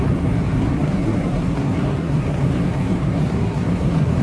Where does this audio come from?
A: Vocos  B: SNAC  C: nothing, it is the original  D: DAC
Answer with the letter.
B